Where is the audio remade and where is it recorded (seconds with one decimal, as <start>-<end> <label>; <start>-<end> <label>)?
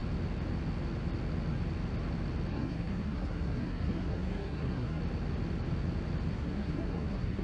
0.0-2.5 recorded; 2.5-5.0 remade; 5.0-6.3 recorded; 6.3-7.4 remade